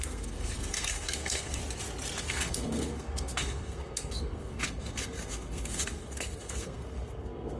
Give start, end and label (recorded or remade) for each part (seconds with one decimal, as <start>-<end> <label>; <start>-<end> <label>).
0.0-1.6 remade; 1.6-2.2 recorded; 2.2-7.6 remade